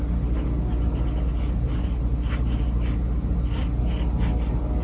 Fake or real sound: real